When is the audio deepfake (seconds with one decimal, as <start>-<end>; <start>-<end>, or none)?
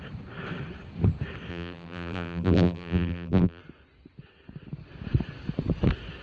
1.5-3.6